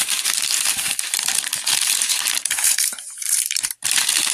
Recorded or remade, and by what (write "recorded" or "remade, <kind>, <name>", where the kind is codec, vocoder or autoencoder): remade, vocoder, BigVGAN v2